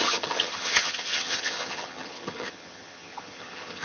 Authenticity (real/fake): fake